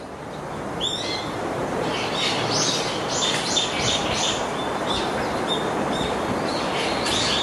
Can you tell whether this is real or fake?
real